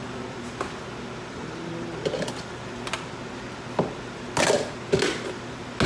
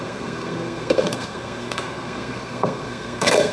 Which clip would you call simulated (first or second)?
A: second